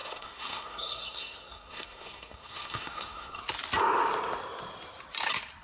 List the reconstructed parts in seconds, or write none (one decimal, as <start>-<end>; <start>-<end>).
0.0-3.4